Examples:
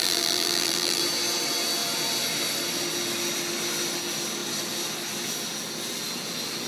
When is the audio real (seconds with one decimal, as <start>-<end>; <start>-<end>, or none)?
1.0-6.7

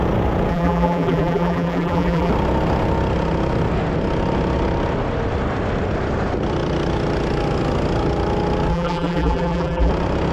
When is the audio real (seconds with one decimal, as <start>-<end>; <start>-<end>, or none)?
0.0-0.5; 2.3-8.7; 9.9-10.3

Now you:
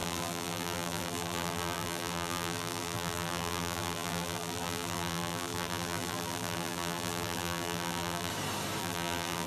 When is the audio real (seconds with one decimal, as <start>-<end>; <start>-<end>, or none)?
8.3-8.8

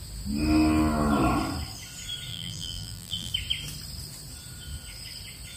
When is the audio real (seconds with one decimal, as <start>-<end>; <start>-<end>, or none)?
0.0-2.3; 3.3-5.6